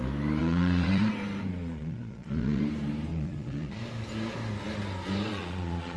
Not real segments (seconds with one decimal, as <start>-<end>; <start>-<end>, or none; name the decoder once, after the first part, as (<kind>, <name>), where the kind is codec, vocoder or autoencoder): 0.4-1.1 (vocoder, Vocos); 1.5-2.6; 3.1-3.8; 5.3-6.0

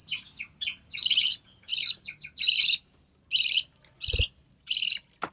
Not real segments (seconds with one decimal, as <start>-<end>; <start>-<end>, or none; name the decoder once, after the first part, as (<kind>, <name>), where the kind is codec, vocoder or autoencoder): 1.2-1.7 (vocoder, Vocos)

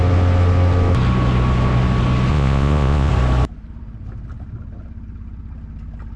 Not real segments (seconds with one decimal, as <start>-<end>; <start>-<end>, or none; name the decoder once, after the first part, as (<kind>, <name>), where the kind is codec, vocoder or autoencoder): 2.3-3.1 (vocoder, Vocos)

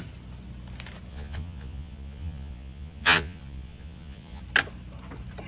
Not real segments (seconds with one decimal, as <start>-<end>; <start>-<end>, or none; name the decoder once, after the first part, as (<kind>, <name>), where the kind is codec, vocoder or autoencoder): 1.1-4.4 (vocoder, Vocos)

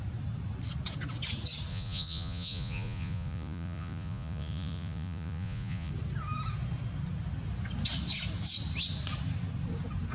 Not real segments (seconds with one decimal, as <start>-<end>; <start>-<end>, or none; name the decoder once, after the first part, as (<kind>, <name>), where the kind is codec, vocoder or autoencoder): 1.7-5.9 (vocoder, Vocos)